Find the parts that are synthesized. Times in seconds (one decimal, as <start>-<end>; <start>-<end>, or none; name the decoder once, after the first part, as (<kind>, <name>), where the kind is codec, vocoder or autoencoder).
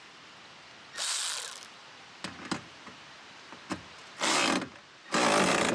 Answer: none